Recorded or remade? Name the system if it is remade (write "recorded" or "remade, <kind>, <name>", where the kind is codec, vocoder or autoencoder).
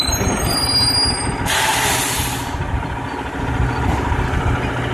recorded